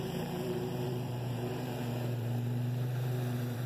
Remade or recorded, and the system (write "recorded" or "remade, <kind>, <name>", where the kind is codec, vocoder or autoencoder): remade, vocoder, BigVGAN v2